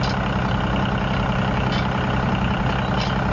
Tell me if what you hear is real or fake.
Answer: real